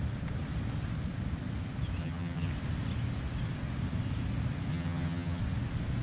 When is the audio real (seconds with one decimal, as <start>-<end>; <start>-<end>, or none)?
0.0-2.0; 2.5-4.7; 5.4-6.0

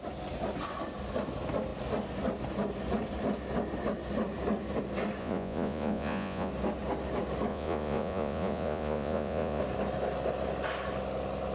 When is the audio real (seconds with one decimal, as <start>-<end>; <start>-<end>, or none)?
0.0-5.2; 6.5-7.5; 9.6-11.5

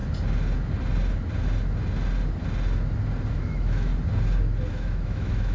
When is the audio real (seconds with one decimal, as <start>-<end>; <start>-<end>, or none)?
0.0-3.3; 3.9-4.7

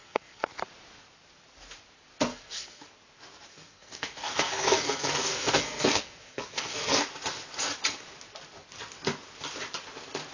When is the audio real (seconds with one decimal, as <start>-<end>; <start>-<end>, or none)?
0.5-2.3; 2.9-3.5; 7.0-10.3